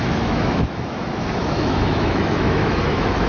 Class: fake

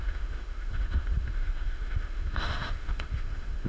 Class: fake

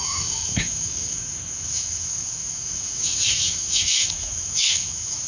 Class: fake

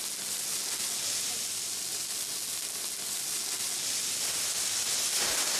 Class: real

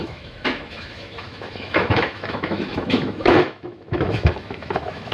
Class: fake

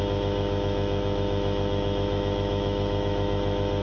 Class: fake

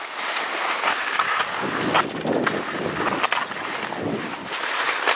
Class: real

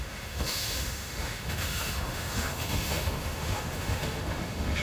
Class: fake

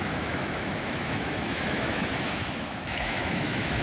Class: fake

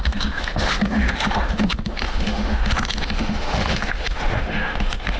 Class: fake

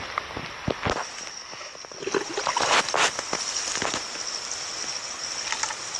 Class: real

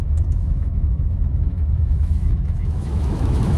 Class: fake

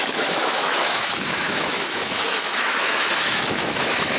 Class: fake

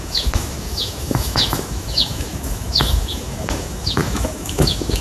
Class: fake